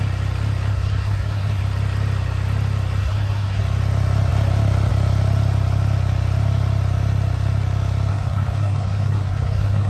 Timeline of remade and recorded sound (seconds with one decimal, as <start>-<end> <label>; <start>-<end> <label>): 0.0-0.7 recorded; 0.7-1.6 remade; 1.6-3.0 recorded; 3.0-3.6 remade; 3.6-8.1 recorded; 8.1-9.9 remade